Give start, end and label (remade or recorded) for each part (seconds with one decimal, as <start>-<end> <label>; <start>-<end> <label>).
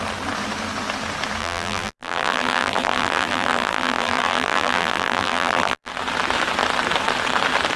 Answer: 0.0-1.4 recorded; 1.4-5.9 remade; 5.9-7.8 recorded